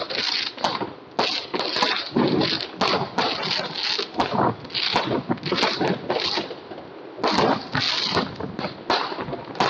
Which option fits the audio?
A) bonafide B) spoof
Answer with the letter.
A